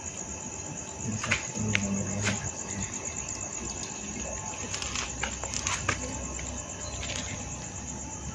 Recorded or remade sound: recorded